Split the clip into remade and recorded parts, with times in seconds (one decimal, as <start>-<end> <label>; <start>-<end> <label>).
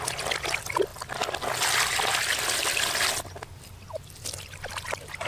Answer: 0.0-5.3 recorded